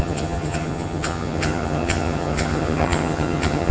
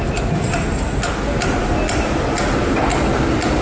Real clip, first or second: second